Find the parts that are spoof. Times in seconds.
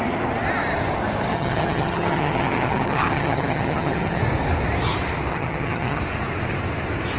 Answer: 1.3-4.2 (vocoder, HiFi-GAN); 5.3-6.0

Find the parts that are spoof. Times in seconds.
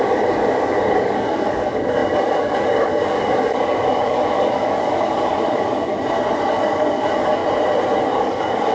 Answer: 0.0-5.9 (codec, DAC); 6.5-7.4; 8.0-8.7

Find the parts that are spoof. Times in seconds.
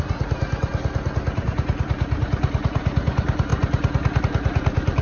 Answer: 0.0-0.7 (vocoder, BigVGAN v2); 1.4-3.5; 4.2-5.0